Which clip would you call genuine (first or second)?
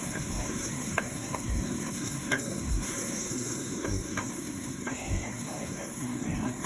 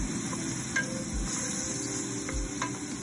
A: second